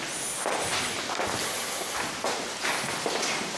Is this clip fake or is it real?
real